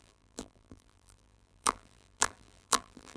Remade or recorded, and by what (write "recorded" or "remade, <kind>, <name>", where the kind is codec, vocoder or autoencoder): remade, vocoder, BigVGAN v2